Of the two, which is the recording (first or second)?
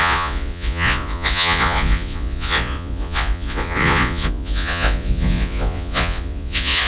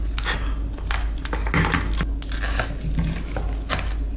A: second